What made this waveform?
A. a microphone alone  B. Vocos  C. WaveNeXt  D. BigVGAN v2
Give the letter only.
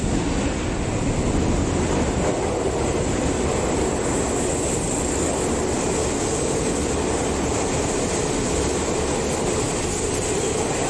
A